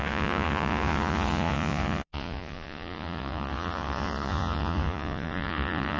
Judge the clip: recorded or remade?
remade